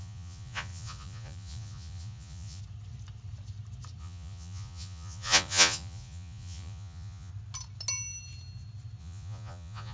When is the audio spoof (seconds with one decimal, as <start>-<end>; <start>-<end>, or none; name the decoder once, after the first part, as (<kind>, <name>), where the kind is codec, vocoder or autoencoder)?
0.0-2.6 (vocoder, Vocos); 4.0-7.3; 9.0-9.9